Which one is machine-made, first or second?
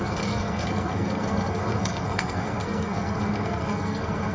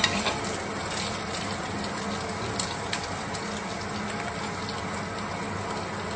first